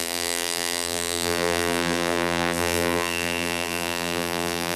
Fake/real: fake